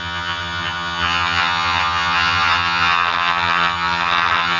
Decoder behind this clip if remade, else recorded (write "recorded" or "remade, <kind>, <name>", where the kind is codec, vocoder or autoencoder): remade, vocoder, HiFi-GAN